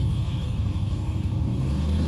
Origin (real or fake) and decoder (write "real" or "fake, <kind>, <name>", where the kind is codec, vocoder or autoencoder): fake, codec, DAC